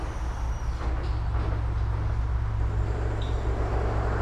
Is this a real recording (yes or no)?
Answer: yes